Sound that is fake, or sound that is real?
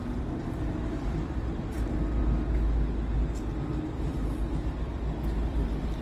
real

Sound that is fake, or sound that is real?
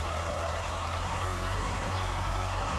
fake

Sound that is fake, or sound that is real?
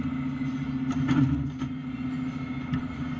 real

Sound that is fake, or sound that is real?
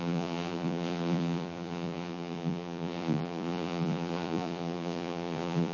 fake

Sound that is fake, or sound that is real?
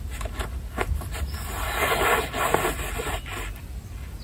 real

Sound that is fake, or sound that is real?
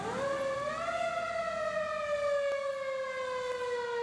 real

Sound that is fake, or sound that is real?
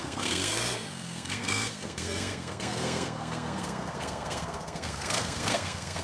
fake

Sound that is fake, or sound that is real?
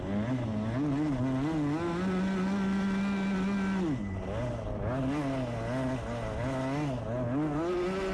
real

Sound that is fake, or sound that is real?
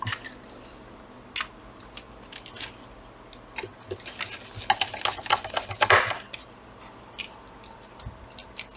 real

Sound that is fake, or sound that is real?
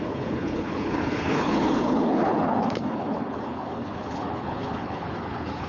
fake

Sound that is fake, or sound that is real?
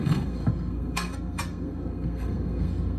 fake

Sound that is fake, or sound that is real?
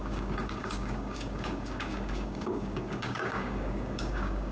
fake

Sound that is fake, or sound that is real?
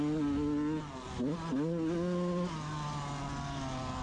real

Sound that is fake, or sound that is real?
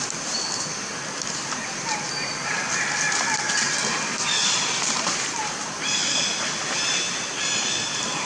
real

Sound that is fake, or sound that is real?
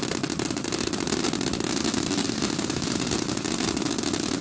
real